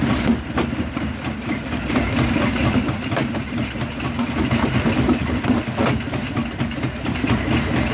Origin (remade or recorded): recorded